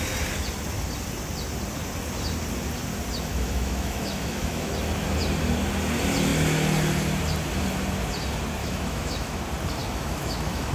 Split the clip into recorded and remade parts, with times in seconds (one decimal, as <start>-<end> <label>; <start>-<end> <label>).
0.0-3.3 recorded; 3.3-4.7 remade; 4.7-8.6 recorded; 8.6-9.4 remade; 9.4-9.8 recorded; 9.8-10.7 remade